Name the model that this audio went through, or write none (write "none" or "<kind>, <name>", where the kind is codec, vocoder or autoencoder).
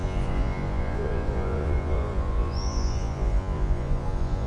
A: vocoder, Vocos